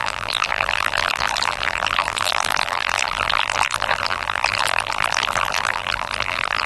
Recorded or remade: remade